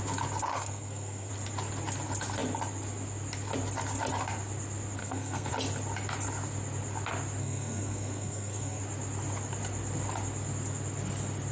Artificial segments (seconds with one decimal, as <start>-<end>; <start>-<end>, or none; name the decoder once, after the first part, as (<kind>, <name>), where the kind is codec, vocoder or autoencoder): 0.5-1.3 (codec, SNAC); 5.0-5.5; 7.4-8.8